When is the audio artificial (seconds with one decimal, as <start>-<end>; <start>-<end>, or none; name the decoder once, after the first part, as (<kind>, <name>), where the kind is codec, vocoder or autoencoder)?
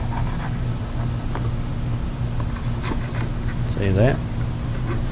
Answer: none